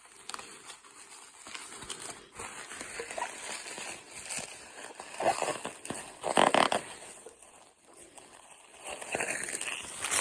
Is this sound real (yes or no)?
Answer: yes